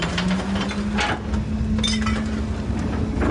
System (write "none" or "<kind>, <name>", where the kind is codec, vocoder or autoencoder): none